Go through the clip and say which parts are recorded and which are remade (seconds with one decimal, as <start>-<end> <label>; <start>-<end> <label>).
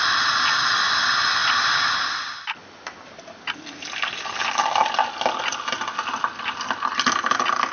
0.0-7.7 recorded